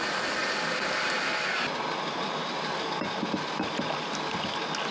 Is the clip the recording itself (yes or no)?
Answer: yes